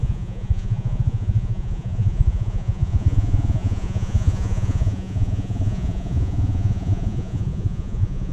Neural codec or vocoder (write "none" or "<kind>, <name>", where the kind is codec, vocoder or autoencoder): vocoder, Vocos